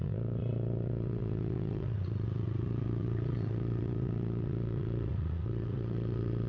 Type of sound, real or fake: fake